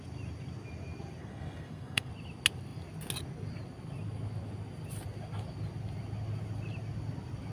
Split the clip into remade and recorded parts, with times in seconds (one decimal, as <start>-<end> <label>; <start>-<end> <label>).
0.0-1.2 recorded; 1.2-2.1 remade; 2.1-7.5 recorded